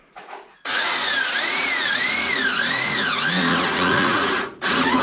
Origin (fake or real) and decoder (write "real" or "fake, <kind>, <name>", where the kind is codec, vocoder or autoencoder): fake, vocoder, Vocos